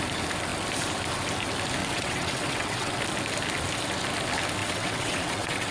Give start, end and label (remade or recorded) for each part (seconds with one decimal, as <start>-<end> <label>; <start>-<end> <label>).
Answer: 0.0-1.8 recorded; 1.8-3.0 remade; 3.0-4.6 recorded; 4.6-5.7 remade